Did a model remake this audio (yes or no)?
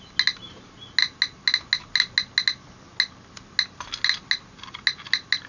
no